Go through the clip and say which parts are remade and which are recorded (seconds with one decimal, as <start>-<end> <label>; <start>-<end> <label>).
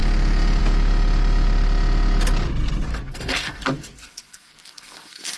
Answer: 0.0-2.9 recorded; 2.9-5.4 remade